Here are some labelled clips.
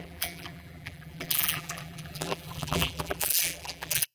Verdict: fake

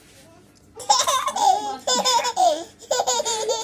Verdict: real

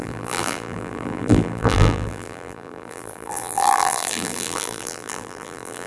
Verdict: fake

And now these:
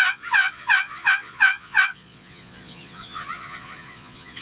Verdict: fake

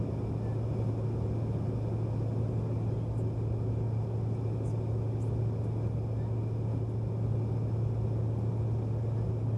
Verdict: real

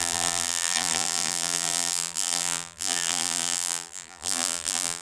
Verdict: fake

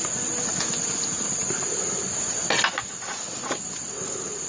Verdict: real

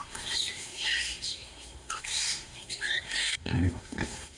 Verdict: fake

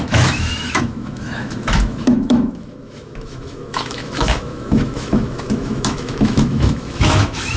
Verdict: fake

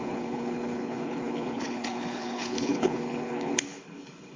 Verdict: fake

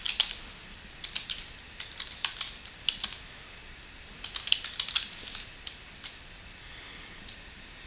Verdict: real